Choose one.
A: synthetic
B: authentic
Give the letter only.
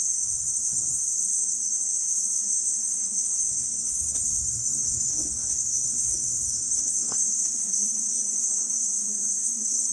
A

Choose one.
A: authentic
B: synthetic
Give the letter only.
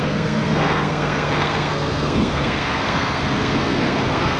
B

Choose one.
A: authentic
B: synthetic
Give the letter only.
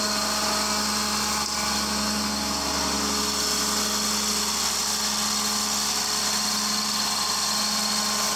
A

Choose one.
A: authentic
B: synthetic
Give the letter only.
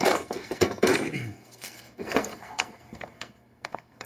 B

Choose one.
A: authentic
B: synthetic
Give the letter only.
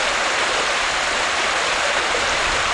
A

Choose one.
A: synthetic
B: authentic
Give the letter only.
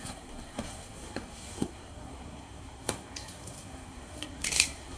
A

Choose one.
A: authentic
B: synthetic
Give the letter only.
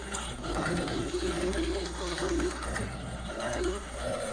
B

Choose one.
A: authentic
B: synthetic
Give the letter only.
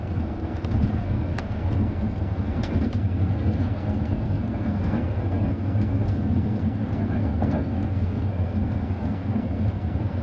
B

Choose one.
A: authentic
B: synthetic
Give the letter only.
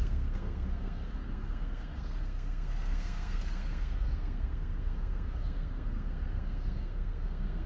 B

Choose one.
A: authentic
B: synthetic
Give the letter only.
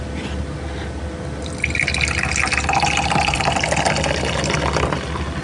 A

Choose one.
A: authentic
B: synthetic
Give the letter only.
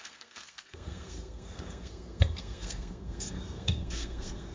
B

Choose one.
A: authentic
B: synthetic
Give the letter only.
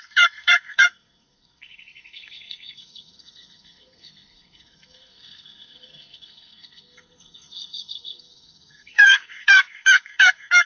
B